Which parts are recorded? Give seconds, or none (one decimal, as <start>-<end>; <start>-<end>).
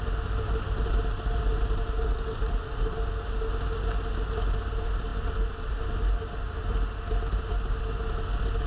0.0-8.7